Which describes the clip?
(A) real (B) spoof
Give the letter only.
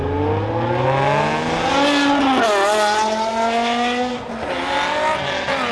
A